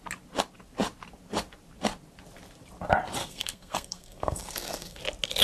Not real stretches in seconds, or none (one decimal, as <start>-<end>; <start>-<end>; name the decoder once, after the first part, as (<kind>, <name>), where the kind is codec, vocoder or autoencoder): 3.2-5.0 (codec, SNAC)